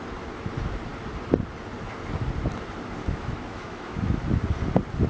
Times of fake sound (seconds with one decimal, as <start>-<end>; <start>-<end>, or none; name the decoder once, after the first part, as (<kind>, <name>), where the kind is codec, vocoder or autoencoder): 3.0-4.2 (autoencoder, DAC-VAE)